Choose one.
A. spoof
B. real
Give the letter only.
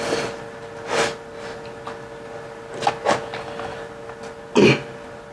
B